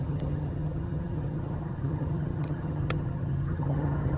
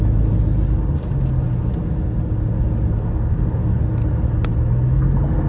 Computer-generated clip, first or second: first